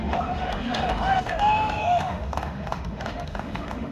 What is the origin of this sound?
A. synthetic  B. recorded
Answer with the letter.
A